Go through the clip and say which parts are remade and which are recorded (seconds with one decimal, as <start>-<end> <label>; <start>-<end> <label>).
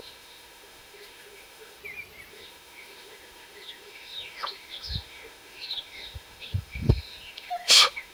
0.0-1.8 remade; 1.8-2.3 recorded; 2.3-8.1 remade